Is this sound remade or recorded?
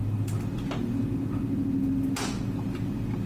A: recorded